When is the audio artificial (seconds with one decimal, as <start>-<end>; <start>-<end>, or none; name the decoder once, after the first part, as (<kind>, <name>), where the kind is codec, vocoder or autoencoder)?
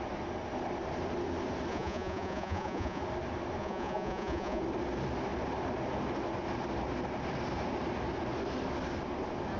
1.7-3.0 (vocoder, Vocos); 3.6-4.6